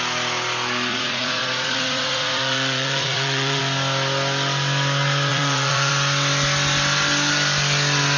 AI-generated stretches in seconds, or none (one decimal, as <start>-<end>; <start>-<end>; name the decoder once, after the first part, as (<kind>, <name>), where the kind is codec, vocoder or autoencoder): 0.9-3.6 (vocoder, Vocos); 5.3-5.9